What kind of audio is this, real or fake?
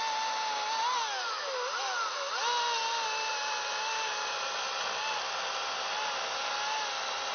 real